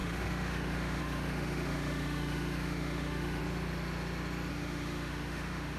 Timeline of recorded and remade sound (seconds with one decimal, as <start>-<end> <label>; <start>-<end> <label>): 0.0-3.4 remade; 3.4-4.5 recorded; 4.5-5.8 remade